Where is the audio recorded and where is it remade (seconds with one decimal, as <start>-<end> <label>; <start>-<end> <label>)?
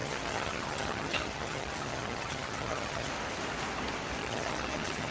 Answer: 0.0-3.1 remade; 3.1-4.2 recorded; 4.2-5.1 remade